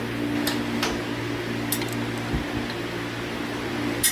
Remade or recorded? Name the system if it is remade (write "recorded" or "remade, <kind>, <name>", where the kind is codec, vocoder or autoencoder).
recorded